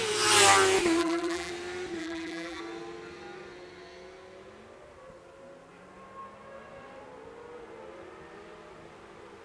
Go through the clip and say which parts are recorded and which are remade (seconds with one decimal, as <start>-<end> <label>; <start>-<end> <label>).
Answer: 0.0-1.0 recorded; 1.0-1.5 remade; 1.5-2.0 recorded; 2.0-2.6 remade; 2.6-9.4 recorded